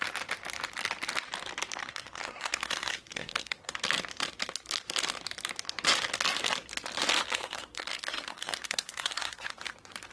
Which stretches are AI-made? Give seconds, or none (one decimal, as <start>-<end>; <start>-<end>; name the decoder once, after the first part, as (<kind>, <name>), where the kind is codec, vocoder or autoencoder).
1.8-3.7 (codec, SNAC); 7.4-9.5